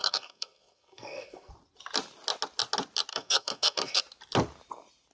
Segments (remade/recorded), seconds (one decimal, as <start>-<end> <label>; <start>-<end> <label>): 0.0-1.5 remade; 1.5-3.1 recorded; 3.1-4.0 remade; 4.0-5.1 recorded